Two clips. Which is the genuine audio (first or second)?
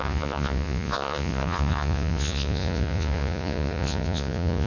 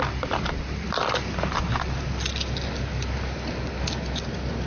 second